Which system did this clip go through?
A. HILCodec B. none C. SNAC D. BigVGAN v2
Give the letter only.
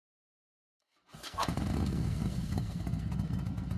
C